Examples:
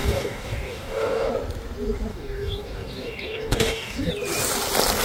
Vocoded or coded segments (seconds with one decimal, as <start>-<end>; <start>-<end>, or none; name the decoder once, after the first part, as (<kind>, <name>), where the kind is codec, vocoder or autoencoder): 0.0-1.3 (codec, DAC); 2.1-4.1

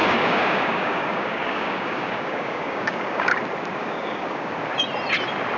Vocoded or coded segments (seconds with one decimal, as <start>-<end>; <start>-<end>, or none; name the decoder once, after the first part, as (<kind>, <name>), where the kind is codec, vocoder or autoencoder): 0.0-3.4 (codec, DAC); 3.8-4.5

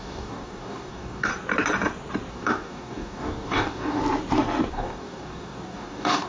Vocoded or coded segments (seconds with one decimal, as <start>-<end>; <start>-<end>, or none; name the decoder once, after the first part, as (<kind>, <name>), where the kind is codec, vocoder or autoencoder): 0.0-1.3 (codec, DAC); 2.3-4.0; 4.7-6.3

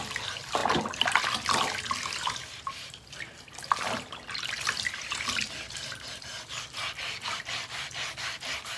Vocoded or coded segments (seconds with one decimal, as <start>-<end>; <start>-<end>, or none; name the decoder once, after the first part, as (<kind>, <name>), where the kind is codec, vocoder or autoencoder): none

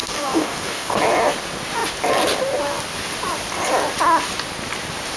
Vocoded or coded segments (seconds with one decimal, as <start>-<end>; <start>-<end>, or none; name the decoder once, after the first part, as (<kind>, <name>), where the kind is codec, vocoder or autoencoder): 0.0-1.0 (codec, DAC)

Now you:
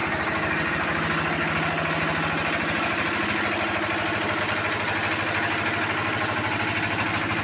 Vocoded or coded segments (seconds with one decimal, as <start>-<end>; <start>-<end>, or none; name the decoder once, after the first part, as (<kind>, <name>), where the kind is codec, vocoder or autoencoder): none

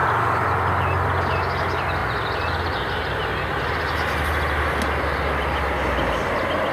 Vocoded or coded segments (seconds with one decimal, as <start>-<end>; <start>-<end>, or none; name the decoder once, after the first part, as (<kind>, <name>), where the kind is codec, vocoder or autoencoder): none